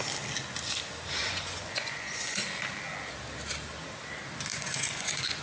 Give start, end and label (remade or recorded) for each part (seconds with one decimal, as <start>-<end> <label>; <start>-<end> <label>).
0.0-1.2 recorded; 1.2-2.4 remade; 2.4-4.5 recorded; 4.5-5.4 remade